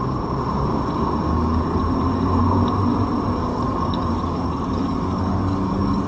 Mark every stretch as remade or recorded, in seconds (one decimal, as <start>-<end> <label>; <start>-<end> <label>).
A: 0.0-1.3 recorded; 1.3-1.8 remade; 1.8-3.5 recorded; 3.5-6.1 remade